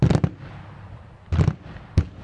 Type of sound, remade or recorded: recorded